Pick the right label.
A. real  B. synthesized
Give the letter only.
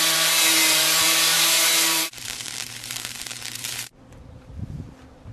B